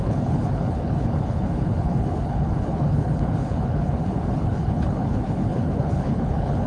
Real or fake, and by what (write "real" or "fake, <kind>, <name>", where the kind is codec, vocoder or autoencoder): fake, codec, HILCodec